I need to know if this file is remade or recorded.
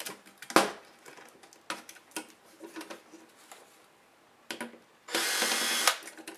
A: recorded